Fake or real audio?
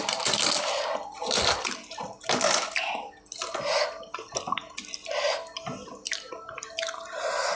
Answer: real